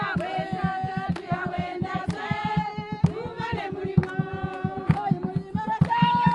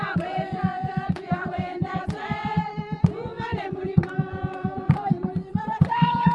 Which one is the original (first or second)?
first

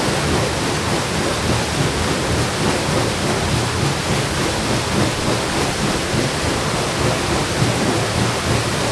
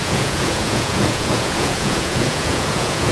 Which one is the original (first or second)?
first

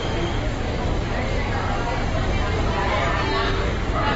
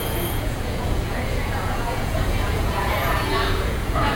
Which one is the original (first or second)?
first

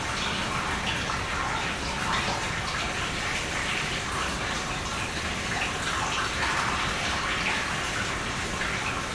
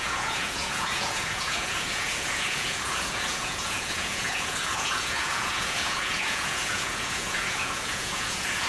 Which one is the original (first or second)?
first